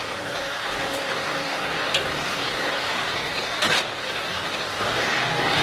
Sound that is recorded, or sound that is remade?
remade